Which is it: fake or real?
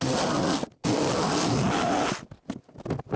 real